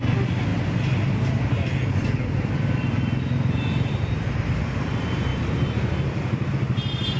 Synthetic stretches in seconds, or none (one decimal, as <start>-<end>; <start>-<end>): none